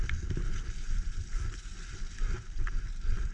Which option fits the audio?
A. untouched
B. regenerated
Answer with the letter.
A